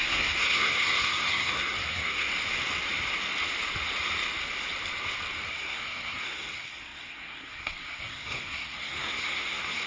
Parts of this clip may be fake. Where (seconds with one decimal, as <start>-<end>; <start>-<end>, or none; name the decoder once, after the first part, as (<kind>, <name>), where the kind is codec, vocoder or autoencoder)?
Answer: 0.0-2.3 (codec, SNAC); 5.5-9.9